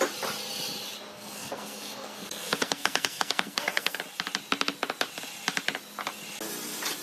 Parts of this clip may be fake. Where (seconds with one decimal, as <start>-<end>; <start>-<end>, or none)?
1.1-4.0